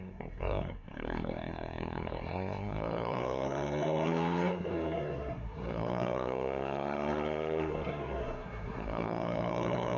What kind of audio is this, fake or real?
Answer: fake